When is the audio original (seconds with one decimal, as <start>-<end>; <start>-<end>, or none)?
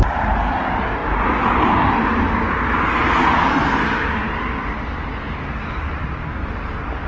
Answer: 0.0-7.1